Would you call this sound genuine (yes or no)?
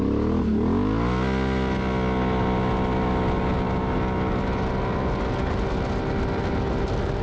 yes